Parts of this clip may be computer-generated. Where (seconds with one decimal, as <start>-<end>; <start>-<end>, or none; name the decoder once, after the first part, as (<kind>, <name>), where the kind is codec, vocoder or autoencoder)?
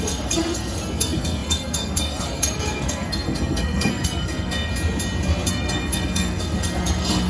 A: 0.0-4.7 (codec, SNAC); 5.5-7.3